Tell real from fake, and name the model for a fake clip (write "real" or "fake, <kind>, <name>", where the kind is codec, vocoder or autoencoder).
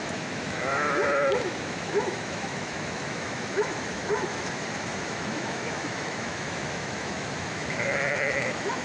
fake, autoencoder, DAC-VAE